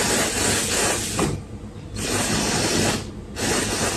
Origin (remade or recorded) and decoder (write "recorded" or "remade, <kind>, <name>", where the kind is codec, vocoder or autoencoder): recorded